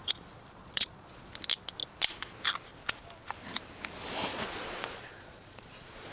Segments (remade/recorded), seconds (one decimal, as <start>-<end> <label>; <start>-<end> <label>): 0.0-0.6 recorded; 0.6-1.3 remade; 1.3-4.3 recorded; 4.3-6.1 remade